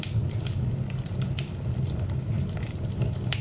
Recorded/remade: recorded